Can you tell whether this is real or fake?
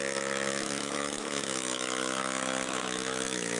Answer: fake